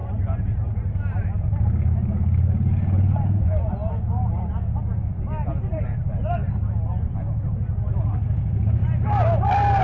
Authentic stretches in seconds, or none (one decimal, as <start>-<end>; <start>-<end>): 0.0-9.8